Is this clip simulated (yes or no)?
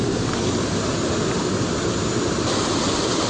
no